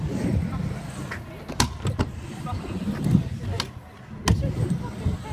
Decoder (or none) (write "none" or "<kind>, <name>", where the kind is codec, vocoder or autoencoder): none